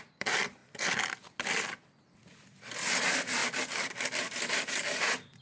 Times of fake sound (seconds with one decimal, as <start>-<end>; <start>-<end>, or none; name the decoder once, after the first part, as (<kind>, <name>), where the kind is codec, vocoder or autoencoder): 0.0-0.6 (vocoder, BigVGAN v2); 3.0-3.4; 5.0-5.4